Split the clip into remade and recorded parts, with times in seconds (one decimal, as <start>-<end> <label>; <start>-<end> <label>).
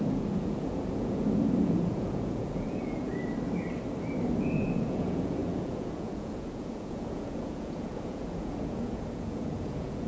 0.0-3.1 remade; 3.1-4.4 recorded; 4.4-10.1 remade